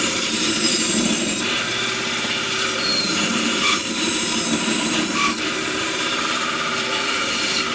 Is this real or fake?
fake